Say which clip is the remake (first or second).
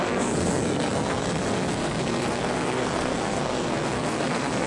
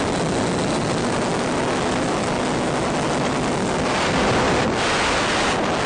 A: first